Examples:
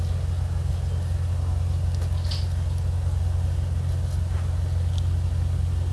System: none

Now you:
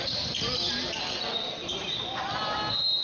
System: none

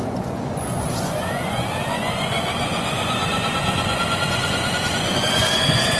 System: vocoder, Vocos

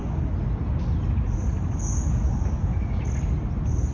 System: none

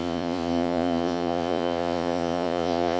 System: vocoder, Vocos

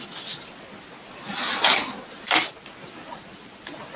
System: none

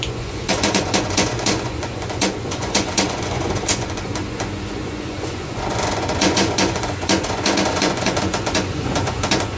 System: vocoder, Vocos